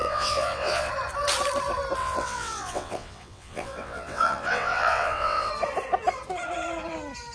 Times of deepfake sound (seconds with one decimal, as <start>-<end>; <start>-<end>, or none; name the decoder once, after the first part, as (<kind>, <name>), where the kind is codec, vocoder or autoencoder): 0.0-0.9 (vocoder, WaveNeXt); 2.0-5.5